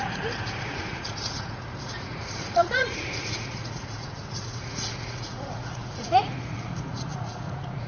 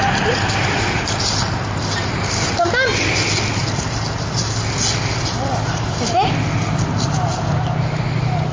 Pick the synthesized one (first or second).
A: first